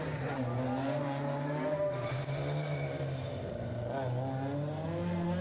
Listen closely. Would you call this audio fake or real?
real